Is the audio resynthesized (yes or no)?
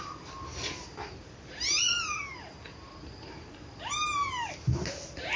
no